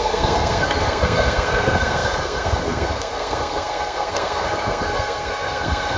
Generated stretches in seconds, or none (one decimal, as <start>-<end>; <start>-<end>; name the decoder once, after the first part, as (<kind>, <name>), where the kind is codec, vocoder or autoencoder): 0.0-6.0 (codec, SNAC)